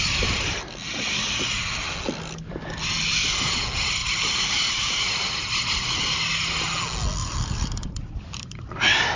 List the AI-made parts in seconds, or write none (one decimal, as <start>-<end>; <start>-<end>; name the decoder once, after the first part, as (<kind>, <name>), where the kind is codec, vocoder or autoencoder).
4.0-5.3 (vocoder, BigVGAN v2); 7.2-9.2